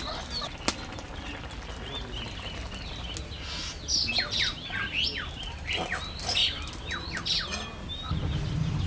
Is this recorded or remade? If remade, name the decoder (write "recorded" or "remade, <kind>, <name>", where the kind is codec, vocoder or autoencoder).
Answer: recorded